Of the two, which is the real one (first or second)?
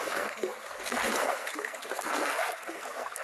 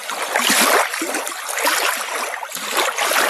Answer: second